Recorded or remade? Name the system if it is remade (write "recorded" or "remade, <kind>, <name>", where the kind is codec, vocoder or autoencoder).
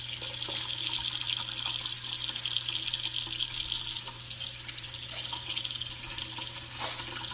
recorded